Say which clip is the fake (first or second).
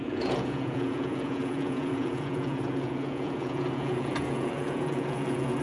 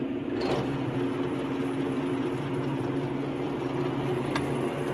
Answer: first